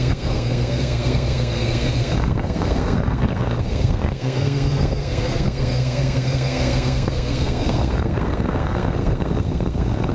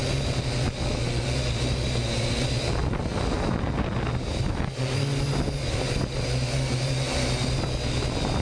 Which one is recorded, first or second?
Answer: second